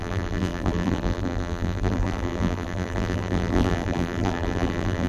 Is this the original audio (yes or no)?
no